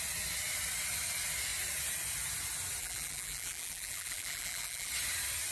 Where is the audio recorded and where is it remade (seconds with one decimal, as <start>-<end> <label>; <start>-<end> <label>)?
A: 0.0-2.8 recorded; 2.8-4.9 remade; 4.9-5.5 recorded